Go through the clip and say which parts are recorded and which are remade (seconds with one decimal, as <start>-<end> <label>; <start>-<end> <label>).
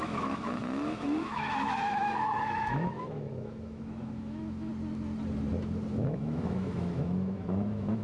0.0-4.7 remade; 4.7-5.9 recorded; 5.9-8.0 remade